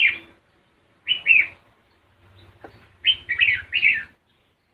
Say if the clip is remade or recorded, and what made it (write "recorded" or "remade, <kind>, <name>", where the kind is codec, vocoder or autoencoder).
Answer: recorded